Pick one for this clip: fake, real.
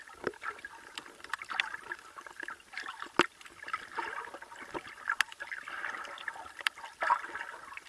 real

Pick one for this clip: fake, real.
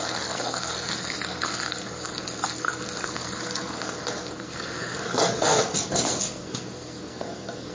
fake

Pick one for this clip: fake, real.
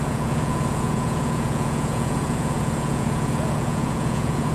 fake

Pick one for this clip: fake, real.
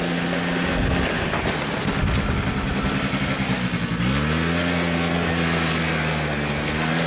real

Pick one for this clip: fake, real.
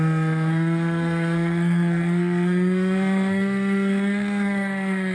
fake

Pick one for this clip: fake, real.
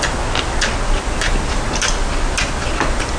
real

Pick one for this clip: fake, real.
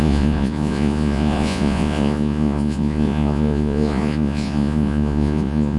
fake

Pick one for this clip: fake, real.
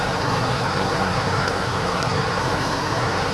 fake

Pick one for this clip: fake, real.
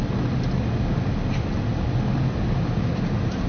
real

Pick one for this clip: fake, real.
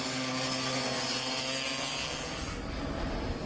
real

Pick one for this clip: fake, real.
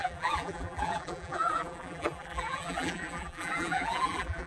fake